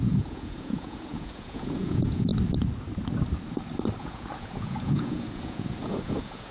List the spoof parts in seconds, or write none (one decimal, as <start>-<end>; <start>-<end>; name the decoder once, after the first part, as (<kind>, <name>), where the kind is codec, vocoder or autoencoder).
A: 0.0-2.3 (vocoder, Vocos); 4.0-6.5